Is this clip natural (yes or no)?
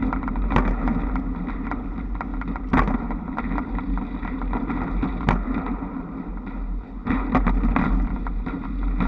yes